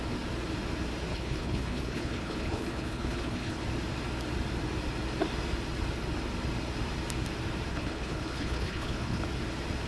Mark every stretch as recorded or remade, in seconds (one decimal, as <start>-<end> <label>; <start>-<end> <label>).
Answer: 0.0-1.1 recorded; 1.1-3.6 remade; 3.6-7.7 recorded; 7.7-9.2 remade; 9.2-9.9 recorded